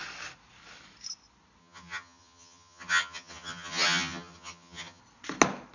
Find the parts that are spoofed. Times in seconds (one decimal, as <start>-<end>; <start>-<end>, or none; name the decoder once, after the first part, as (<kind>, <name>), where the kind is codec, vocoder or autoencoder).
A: 1.6-5.0 (vocoder, HiFi-GAN)